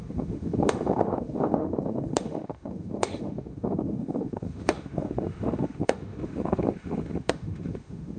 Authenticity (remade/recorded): remade